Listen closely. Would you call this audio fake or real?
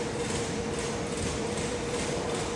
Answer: real